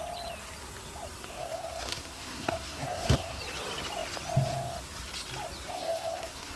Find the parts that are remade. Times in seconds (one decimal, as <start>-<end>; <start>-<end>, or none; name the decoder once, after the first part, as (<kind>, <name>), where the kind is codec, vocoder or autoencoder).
1.3-3.4 (codec, SNAC); 5.7-6.6